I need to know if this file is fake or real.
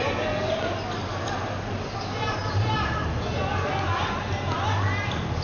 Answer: real